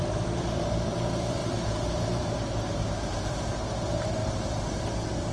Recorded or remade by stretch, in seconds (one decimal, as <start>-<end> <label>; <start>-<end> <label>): 0.0-5.3 remade